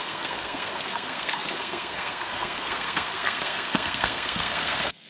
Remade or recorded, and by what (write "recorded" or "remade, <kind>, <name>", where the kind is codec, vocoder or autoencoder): remade, codec, SNAC